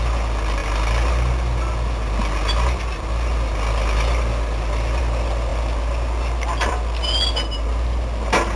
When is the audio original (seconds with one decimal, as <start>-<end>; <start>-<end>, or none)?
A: 0.0-8.6